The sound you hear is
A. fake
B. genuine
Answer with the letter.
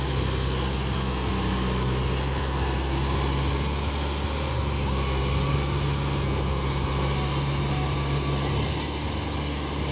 B